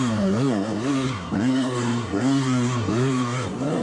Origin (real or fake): fake